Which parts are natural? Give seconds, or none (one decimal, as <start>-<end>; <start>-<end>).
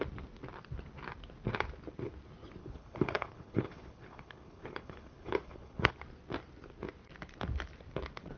0.0-2.6; 5.9-8.4